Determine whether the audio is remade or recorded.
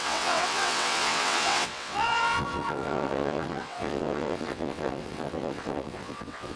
remade